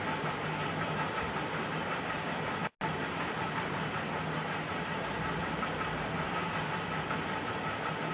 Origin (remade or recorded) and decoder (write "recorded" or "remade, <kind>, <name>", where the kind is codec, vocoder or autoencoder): recorded